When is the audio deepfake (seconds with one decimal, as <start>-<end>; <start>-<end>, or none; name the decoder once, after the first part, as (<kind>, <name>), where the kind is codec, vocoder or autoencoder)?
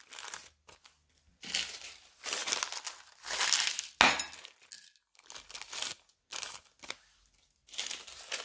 none